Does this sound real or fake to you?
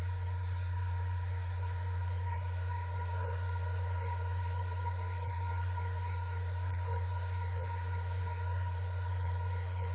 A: fake